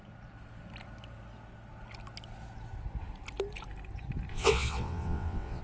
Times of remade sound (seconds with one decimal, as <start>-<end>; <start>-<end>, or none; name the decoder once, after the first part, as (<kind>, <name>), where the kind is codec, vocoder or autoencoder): 4.3-5.6 (vocoder, WaveNeXt)